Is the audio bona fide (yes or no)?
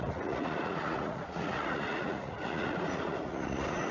no